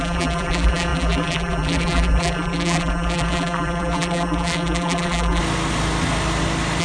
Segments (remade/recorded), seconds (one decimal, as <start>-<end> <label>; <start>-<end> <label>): 0.0-5.4 remade; 5.4-6.8 recorded

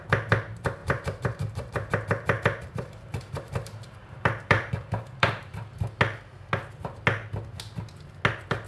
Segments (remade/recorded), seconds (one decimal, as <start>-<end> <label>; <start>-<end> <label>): 0.0-0.8 recorded; 0.8-5.5 remade; 5.5-8.7 recorded

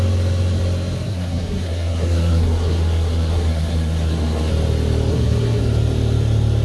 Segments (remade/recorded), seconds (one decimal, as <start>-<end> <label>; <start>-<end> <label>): 0.0-1.1 recorded; 1.1-4.5 remade; 4.5-5.1 recorded; 5.1-5.6 remade; 5.6-6.6 recorded

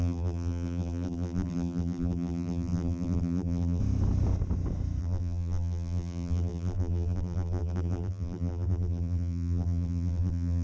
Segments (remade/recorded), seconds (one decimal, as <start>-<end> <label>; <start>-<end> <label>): 0.0-3.8 remade; 3.8-5.0 recorded; 5.0-10.6 remade

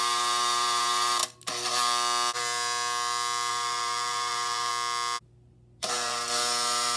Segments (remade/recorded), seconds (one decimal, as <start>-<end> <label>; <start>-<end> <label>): 0.0-1.2 remade; 1.2-3.5 recorded; 3.5-4.7 remade; 4.7-5.8 recorded; 5.8-7.0 remade